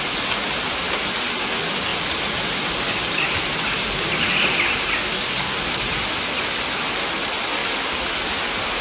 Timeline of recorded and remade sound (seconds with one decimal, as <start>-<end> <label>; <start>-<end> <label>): 0.0-1.9 recorded; 1.9-4.3 remade; 4.3-7.6 recorded; 7.6-8.1 remade; 8.1-8.8 recorded